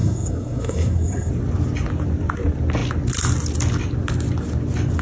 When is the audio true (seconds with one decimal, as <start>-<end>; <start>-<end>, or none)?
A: 1.3-5.0